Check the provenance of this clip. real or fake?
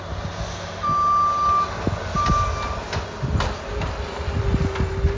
real